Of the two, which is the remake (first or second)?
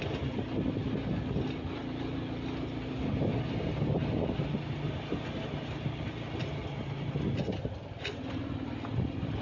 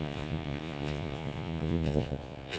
second